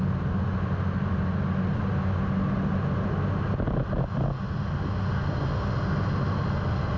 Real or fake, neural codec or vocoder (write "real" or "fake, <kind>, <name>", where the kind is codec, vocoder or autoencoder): real